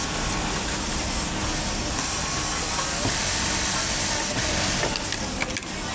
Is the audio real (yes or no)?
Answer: yes